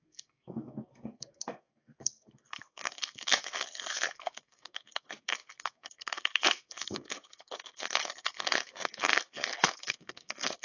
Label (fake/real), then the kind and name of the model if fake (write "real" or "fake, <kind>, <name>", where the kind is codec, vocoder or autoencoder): fake, codec, SNAC